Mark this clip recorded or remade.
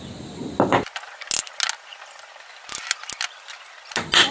recorded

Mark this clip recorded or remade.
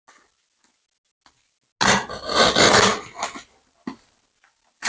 recorded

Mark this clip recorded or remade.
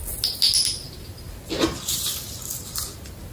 recorded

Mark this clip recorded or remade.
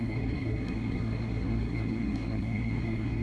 remade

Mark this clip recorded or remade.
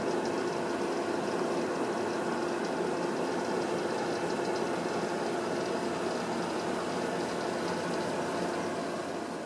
recorded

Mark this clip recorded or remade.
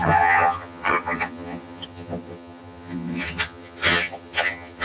remade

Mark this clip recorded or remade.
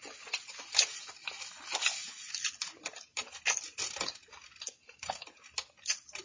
recorded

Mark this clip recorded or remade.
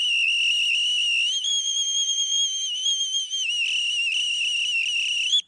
recorded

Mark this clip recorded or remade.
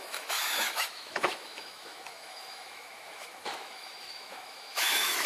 remade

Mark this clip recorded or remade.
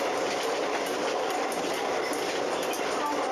recorded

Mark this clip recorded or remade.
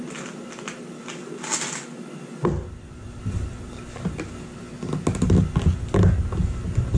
recorded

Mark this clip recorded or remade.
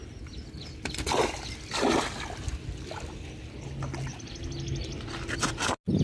recorded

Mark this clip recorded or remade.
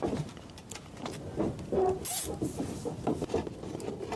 recorded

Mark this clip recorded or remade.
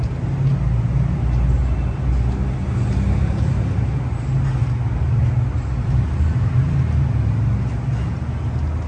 recorded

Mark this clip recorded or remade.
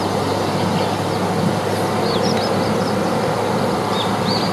recorded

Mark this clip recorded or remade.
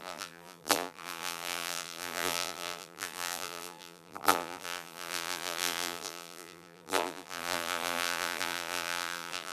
remade